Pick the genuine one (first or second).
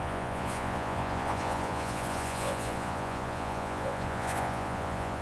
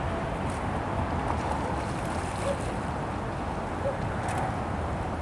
second